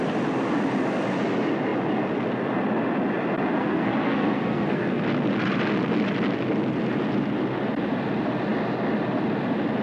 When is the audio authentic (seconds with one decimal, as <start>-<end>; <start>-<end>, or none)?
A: 0.0-3.6; 5.0-9.8